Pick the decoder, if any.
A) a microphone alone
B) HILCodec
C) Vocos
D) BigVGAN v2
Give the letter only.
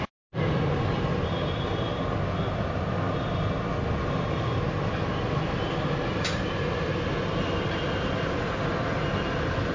A